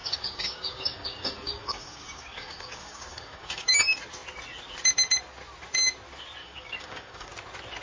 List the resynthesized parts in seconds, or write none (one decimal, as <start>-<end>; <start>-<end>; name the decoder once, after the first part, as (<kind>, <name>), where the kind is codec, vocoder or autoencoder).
0.0-3.7 (codec, DAC); 6.4-7.3